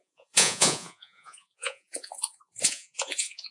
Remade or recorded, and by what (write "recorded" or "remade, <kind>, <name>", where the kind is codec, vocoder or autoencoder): remade, vocoder, Vocos